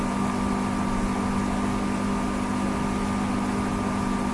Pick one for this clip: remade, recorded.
recorded